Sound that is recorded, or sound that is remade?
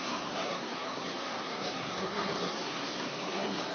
remade